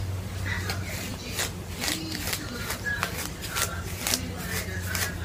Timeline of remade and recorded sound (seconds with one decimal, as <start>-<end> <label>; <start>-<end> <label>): 0.0-5.2 recorded